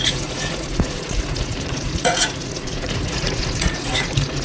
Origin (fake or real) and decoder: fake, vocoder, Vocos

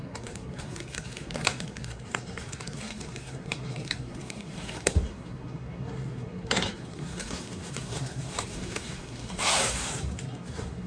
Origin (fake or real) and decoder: fake, codec, SNAC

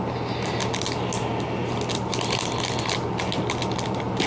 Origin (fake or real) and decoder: real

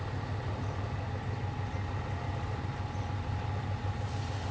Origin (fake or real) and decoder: real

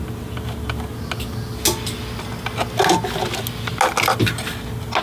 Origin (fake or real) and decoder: real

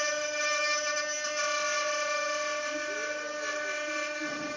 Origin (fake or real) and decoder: real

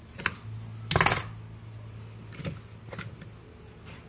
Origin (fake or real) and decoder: real